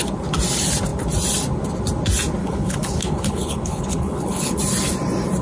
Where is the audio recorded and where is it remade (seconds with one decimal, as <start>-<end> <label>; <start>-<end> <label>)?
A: 0.0-2.4 recorded; 2.4-4.6 remade; 4.6-5.4 recorded